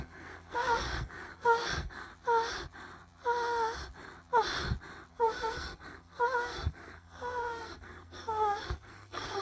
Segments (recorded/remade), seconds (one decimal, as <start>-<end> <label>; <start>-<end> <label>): 0.0-2.1 remade; 2.1-5.1 recorded; 5.1-9.4 remade